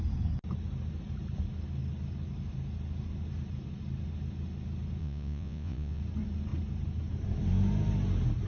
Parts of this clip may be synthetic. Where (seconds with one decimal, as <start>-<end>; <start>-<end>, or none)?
5.0-6.0